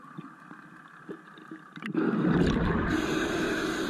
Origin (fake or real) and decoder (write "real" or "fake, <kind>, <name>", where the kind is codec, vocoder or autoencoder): real